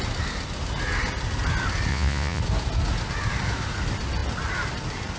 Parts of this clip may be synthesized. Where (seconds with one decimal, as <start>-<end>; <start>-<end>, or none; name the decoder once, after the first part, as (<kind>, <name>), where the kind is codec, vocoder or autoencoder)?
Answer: 1.9-2.4 (vocoder, Vocos)